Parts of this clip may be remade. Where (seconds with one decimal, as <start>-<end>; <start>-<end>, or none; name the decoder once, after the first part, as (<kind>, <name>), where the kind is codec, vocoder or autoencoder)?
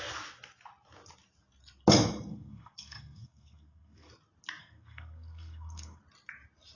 2.3-4.1 (codec, SNAC); 4.6-6.0